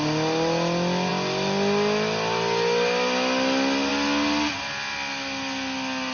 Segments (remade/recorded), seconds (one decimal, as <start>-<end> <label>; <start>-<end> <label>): 0.0-6.1 recorded